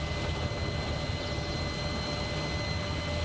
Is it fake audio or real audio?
real